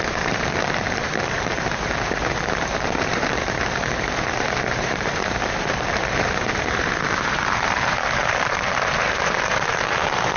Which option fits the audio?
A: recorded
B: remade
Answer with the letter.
B